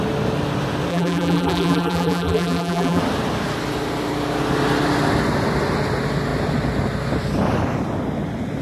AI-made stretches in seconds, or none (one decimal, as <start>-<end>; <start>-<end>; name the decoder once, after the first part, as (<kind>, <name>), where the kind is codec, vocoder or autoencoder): 0.9-3.0 (vocoder, BigVGAN v2)